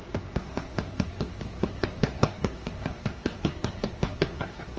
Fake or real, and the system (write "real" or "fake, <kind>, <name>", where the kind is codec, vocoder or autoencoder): fake, codec, SNAC